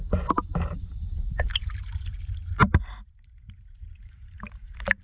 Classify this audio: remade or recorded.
remade